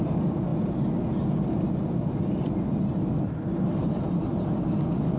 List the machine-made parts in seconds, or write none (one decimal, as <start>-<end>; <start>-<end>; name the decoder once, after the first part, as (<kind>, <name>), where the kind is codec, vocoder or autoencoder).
none